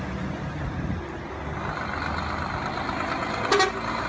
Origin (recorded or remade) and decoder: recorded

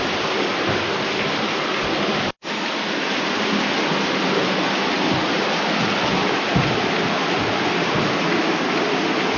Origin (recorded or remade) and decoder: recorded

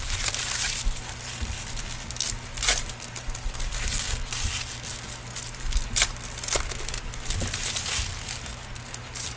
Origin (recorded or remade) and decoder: recorded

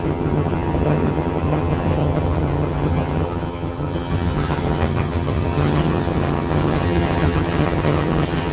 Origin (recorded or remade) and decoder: remade, vocoder, HiFi-GAN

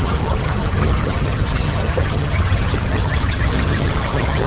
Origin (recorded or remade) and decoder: remade, vocoder, HiFi-GAN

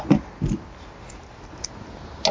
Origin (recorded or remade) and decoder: recorded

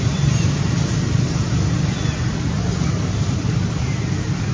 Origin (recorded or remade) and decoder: recorded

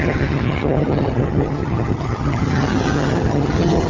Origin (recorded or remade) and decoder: remade, vocoder, HiFi-GAN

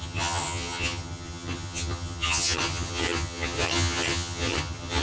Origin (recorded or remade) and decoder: remade, vocoder, HiFi-GAN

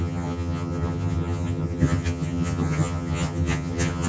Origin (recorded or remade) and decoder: remade, vocoder, HiFi-GAN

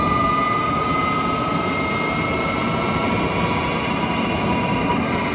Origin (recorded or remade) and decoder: recorded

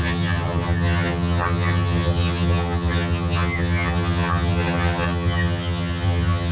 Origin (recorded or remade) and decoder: remade, vocoder, HiFi-GAN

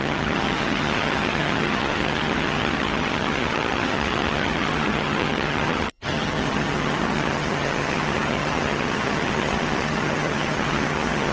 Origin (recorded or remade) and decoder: remade, vocoder, HiFi-GAN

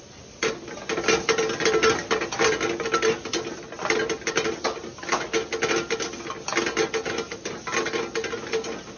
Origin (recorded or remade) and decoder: recorded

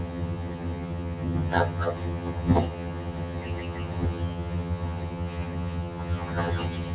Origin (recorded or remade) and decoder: remade, vocoder, HiFi-GAN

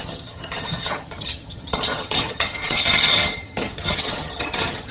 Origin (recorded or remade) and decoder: remade, vocoder, HiFi-GAN